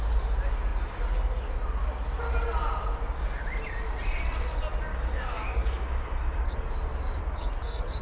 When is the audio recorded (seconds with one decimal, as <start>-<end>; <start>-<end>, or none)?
0.0-4.9; 6.7-7.2